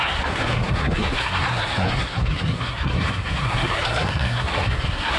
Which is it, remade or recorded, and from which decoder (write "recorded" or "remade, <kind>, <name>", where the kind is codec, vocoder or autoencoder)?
remade, codec, SNAC